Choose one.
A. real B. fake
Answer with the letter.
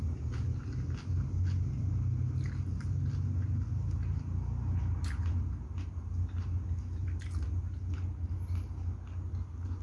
A